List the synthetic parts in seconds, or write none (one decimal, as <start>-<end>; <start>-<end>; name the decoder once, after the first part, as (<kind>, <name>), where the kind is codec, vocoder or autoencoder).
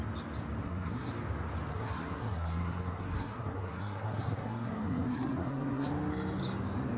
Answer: 0.6-1.1 (codec, SNAC); 1.7-5.9